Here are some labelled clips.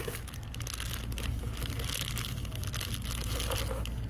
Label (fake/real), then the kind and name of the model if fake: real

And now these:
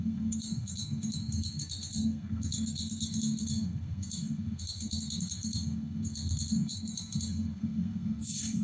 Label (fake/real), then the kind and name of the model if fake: fake, codec, SNAC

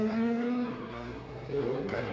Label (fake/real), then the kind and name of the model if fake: fake, codec, SNAC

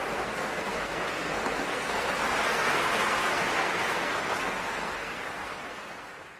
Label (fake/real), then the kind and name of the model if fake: fake, codec, SNAC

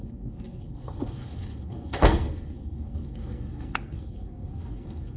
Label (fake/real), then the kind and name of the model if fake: fake, codec, SNAC